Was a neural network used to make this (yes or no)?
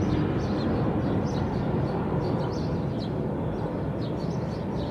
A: no